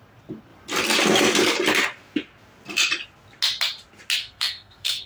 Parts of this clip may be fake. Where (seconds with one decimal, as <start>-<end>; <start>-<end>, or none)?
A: 4.2-5.1